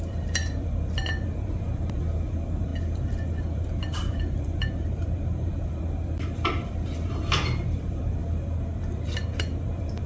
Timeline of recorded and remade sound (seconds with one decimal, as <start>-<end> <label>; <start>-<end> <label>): 0.0-10.1 remade